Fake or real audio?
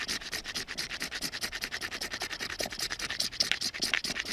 real